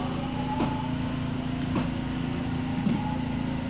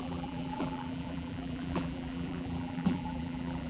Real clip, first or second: first